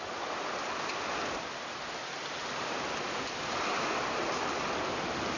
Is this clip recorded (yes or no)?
yes